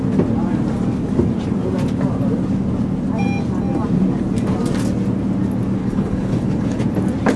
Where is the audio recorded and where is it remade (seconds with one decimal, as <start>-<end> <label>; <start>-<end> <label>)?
0.0-5.8 recorded; 5.8-6.8 remade; 6.8-7.4 recorded